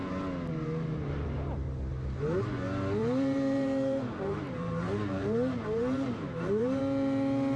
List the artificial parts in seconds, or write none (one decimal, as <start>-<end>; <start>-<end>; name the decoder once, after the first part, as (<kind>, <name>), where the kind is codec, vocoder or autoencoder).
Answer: 3.0-6.8 (vocoder, BigVGAN v2)

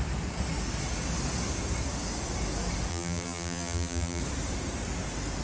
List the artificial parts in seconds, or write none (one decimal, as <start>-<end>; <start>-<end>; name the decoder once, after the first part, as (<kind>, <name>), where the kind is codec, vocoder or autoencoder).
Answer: 2.9-4.2 (vocoder, BigVGAN v2)

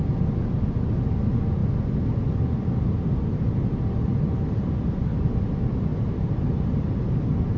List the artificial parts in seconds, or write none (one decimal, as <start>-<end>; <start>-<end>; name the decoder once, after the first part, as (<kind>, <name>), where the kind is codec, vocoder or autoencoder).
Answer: 5.9-7.1 (vocoder, BigVGAN v2)

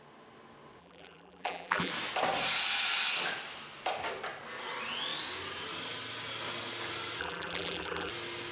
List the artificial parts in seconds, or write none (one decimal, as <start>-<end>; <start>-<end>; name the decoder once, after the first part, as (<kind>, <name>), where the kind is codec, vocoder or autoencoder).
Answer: 0.8-1.9 (vocoder, BigVGAN v2); 7.2-8.1

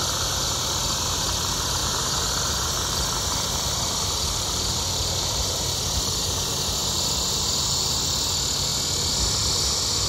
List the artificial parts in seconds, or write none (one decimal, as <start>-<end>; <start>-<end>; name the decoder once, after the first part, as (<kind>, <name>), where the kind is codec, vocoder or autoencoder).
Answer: 0.0-1.8 (vocoder, BigVGAN v2); 2.5-8.7

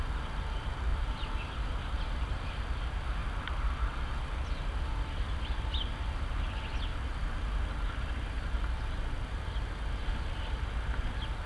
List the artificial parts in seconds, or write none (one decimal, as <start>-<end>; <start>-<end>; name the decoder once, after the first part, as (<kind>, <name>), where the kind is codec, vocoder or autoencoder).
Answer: 0.9-2.6 (vocoder, BigVGAN v2)

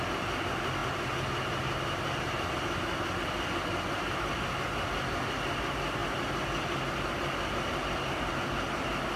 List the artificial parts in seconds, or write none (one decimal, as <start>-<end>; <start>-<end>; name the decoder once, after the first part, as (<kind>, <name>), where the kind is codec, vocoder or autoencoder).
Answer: none

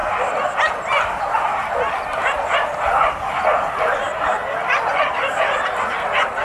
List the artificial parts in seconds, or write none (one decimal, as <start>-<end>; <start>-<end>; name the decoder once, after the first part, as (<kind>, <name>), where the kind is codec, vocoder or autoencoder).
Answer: 3.8-6.4 (vocoder, BigVGAN v2)